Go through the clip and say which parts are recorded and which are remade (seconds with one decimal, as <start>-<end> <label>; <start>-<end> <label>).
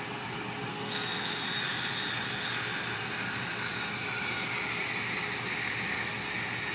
0.0-0.7 recorded; 0.7-1.4 remade; 1.4-6.7 recorded